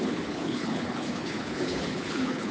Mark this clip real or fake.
fake